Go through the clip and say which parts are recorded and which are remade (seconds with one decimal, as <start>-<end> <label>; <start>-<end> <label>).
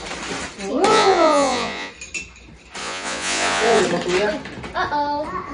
0.0-0.9 recorded; 0.9-1.9 remade; 1.9-2.8 recorded; 2.8-3.8 remade; 3.8-5.5 recorded